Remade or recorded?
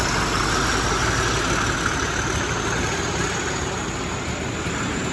recorded